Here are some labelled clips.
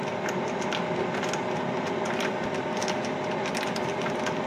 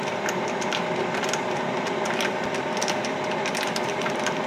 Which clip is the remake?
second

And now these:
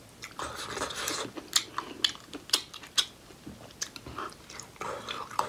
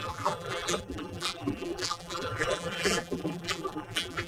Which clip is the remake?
second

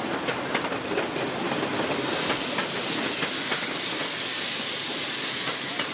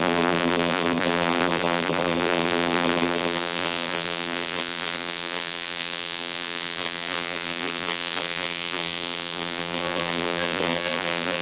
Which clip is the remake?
second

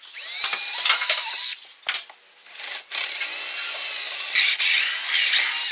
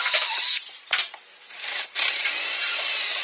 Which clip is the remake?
second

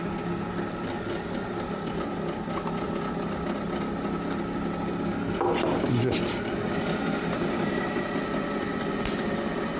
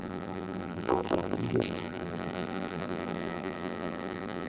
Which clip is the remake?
second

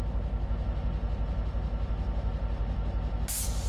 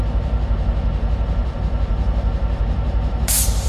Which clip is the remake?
second